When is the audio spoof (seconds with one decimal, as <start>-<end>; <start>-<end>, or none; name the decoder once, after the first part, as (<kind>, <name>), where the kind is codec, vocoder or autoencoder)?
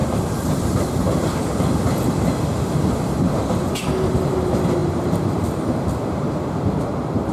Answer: 0.0-0.9 (vocoder, BigVGAN v2); 4.8-7.3